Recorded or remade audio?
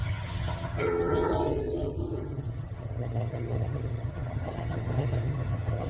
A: remade